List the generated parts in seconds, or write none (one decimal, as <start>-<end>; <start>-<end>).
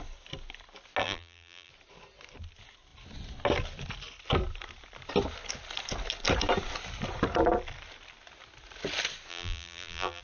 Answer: 1.0-1.7; 9.3-10.2